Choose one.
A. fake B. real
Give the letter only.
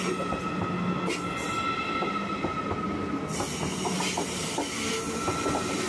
B